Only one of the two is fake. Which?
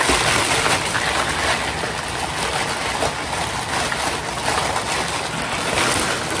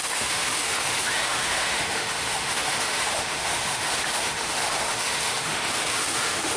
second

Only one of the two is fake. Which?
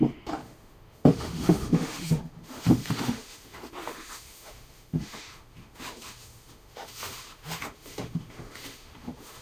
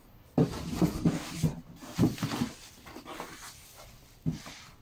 first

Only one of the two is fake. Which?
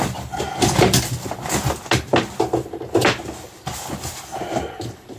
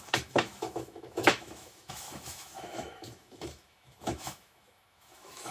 second